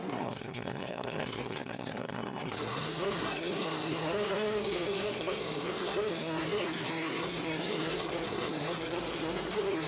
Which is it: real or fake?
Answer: fake